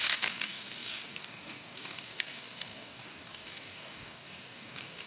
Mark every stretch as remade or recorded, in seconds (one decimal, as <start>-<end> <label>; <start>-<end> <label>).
0.0-5.1 remade